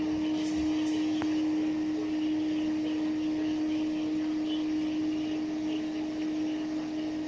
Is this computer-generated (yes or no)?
no